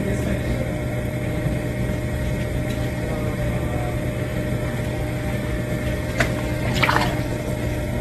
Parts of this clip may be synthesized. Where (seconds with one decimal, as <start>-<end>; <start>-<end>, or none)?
none